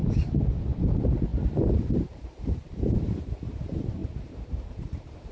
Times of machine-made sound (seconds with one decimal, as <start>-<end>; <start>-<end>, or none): 0.8-1.3; 1.9-5.3

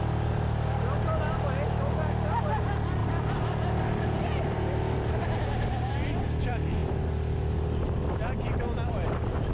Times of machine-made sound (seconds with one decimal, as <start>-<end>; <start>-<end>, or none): 3.0-5.9

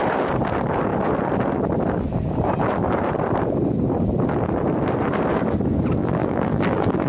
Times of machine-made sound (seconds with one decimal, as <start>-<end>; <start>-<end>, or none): 6.0-7.1

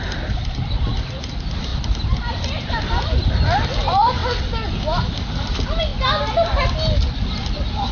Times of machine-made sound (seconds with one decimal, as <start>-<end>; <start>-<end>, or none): 0.0-4.2; 5.1-5.9; 7.1-7.9

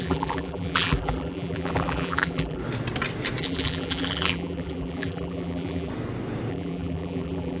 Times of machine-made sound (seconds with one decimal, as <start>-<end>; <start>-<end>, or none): 0.0-2.6; 3.4-5.9; 6.5-7.6

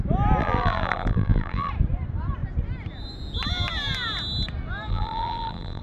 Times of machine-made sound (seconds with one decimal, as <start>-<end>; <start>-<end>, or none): 0.4-1.7; 4.9-5.8